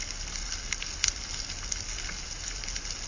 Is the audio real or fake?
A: real